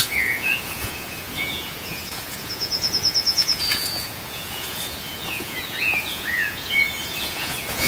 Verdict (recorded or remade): remade